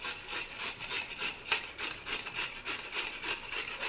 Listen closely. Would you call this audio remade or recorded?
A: recorded